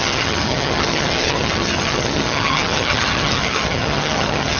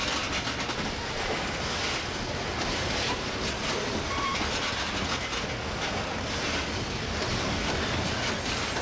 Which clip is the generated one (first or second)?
first